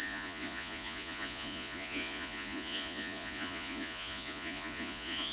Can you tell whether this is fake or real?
fake